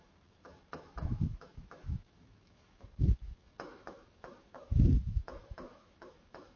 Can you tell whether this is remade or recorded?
remade